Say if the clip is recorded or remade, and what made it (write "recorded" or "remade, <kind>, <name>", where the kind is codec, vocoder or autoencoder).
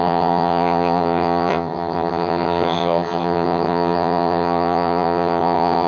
remade, vocoder, HiFi-GAN